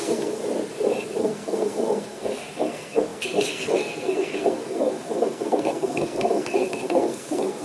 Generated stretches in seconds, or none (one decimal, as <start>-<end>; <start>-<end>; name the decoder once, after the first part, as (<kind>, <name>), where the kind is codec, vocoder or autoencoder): 0.0-0.4 (codec, SNAC); 1.2-7.6

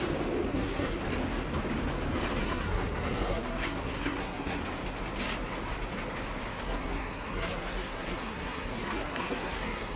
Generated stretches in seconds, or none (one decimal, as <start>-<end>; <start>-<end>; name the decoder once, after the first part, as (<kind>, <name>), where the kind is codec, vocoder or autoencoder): 0.5-1.0 (codec, SNAC); 2.4-4.6; 6.5-10.0

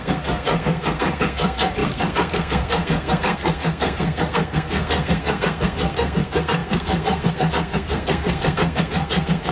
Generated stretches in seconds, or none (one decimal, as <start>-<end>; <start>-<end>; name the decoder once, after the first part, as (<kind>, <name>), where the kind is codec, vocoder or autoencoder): 0.0-9.5 (codec, SNAC)

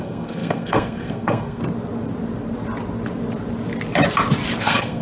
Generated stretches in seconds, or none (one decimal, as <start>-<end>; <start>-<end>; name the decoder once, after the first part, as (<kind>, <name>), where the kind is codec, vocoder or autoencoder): 0.0-1.6 (codec, SNAC); 4.6-5.0

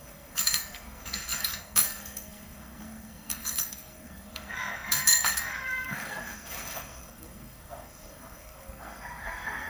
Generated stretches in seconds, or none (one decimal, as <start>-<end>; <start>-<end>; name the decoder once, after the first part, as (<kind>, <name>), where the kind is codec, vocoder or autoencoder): 0.0-9.7 (codec, SNAC)

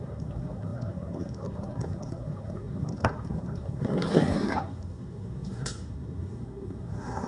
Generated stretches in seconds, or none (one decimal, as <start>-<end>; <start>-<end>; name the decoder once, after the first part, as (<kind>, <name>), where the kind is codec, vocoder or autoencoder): 0.0-7.3 (codec, SNAC)